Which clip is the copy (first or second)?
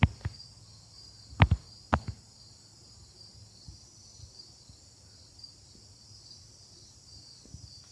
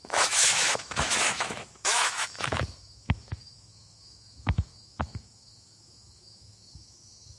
second